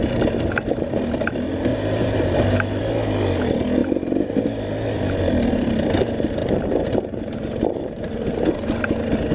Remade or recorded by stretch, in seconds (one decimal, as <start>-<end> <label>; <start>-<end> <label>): 0.0-1.7 recorded; 1.7-2.8 remade; 2.8-6.4 recorded; 6.4-8.0 remade; 8.0-9.3 recorded